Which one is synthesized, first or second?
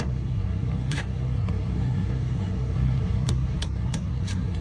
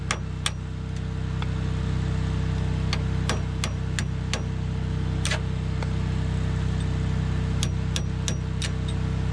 first